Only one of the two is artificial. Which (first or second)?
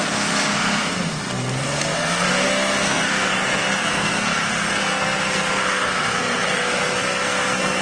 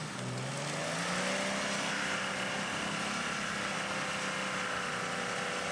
first